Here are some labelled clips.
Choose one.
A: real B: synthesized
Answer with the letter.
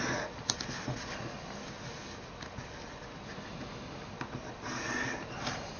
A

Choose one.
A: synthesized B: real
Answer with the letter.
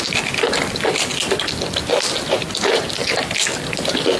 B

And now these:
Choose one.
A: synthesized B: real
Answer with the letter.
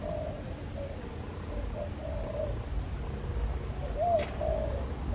B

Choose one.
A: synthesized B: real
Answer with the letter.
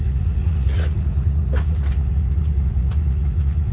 A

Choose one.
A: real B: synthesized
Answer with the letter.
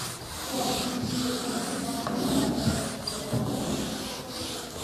A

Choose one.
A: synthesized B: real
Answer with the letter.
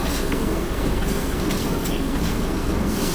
A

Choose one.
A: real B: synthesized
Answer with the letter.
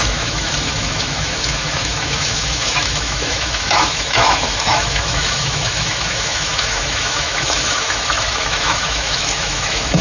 B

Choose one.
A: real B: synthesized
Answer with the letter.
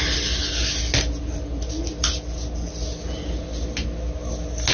A